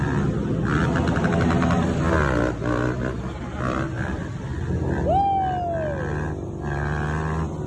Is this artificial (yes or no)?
no